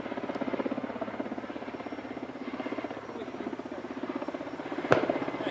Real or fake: real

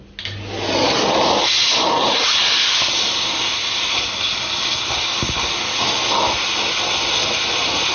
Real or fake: real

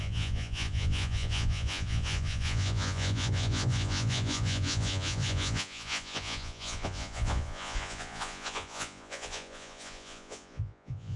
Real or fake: fake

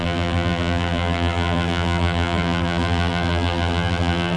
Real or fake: fake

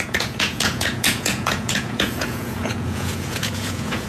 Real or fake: fake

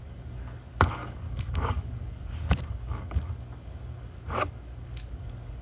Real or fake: fake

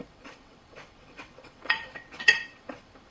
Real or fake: fake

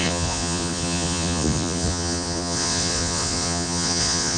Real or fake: fake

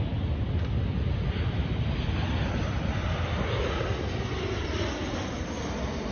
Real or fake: real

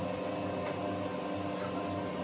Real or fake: real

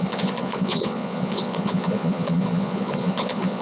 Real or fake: fake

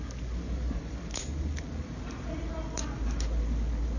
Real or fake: real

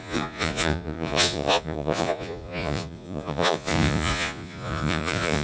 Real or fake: fake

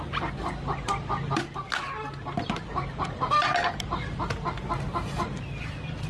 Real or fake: real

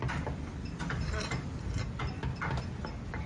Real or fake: fake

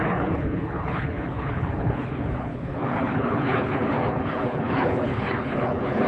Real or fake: fake